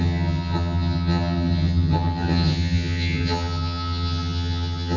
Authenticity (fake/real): fake